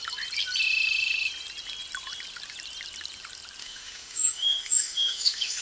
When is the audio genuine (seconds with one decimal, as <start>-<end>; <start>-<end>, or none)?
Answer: 0.0-3.6